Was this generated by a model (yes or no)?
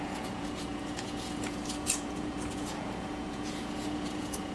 yes